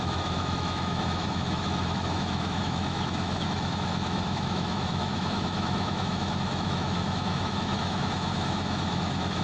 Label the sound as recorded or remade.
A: remade